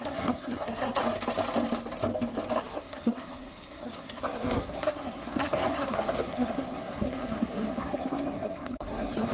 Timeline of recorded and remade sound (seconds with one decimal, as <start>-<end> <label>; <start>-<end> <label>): 0.0-1.0 remade; 1.0-2.6 recorded; 2.6-9.3 remade